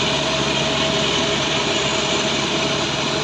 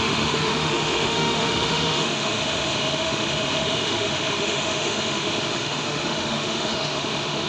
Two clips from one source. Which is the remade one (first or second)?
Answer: second